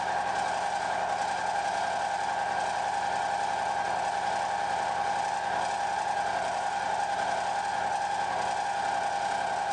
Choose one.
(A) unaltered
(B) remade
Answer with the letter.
A